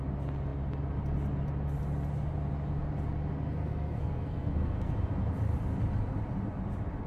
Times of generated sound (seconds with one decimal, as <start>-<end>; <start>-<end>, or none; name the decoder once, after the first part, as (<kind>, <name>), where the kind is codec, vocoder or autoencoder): 3.6-4.9 (codec, SNAC)